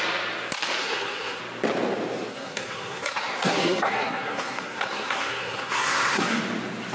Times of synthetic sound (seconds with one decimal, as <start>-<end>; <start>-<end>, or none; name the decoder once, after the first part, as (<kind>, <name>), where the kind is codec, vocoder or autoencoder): 0.8-1.4 (codec, SNAC); 2.3-6.4